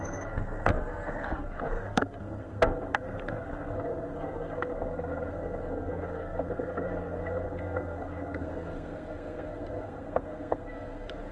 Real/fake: fake